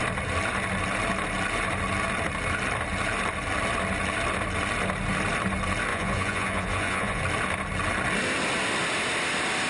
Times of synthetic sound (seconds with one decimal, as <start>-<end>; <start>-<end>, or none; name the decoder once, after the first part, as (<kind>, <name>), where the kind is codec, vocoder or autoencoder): 5.9-7.2 (vocoder, Vocos)